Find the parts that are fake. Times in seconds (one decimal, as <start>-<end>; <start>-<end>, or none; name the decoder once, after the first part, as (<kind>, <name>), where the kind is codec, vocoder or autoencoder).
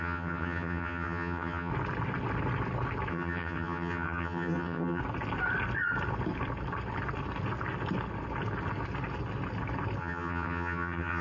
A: 0.0-1.7 (vocoder, HiFi-GAN); 3.1-5.0; 10.0-11.2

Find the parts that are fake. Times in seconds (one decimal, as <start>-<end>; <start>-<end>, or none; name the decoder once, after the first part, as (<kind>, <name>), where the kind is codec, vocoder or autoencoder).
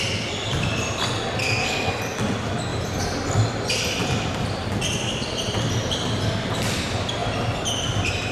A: 1.4-1.9 (codec, SNAC)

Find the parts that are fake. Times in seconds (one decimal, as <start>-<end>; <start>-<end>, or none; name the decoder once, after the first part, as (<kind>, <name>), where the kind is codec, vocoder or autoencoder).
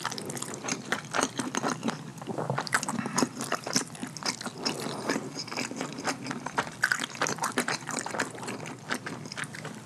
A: 0.0-4.0 (vocoder, BigVGAN v2); 4.7-9.9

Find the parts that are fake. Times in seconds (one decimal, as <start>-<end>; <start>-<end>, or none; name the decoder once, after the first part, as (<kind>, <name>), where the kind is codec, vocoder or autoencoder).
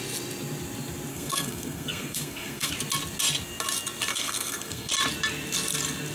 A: 1.1-2.7 (codec, SNAC); 4.1-4.9